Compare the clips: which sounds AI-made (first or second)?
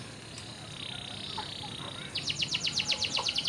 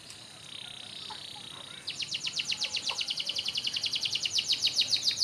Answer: second